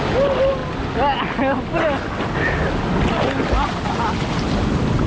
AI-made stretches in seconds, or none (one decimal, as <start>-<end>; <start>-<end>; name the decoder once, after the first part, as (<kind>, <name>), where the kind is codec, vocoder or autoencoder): none